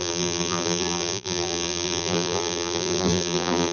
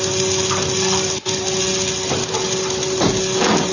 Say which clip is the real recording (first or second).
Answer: second